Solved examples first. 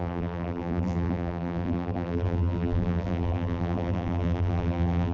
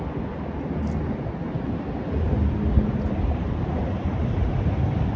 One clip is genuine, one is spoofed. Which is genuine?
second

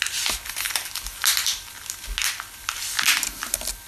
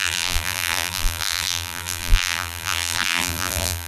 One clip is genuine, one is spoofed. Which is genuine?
first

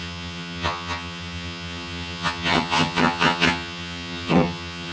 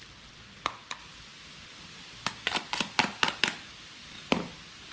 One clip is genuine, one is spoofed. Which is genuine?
second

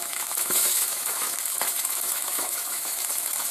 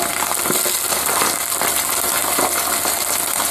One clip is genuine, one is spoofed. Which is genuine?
second